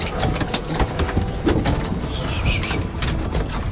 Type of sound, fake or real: real